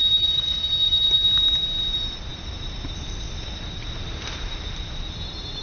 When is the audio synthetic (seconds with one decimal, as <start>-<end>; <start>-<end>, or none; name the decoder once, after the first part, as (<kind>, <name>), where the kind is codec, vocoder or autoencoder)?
0.8-1.8 (vocoder, BigVGAN v2)